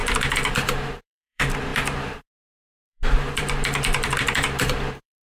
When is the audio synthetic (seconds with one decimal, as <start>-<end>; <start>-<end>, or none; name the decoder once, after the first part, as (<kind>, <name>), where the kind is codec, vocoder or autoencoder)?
0.5-5.4 (vocoder, BigVGAN v2)